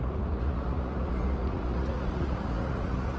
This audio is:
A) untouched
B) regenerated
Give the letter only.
B